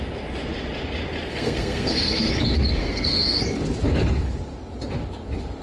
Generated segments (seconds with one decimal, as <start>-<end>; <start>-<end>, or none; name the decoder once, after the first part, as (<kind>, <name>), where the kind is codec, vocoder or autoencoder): 1.3-2.3 (codec, SNAC); 2.8-3.4